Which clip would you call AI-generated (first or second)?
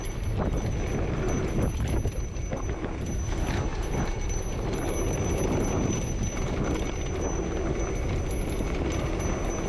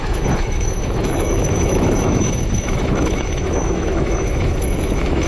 second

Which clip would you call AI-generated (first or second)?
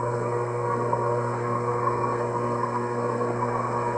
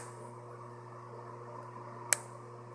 first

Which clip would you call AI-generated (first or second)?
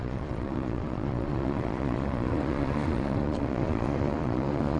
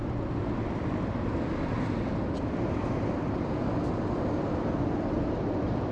first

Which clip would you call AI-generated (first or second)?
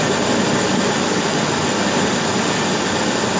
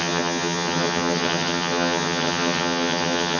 second